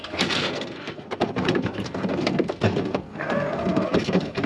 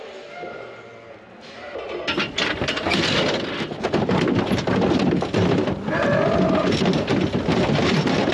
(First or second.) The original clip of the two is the second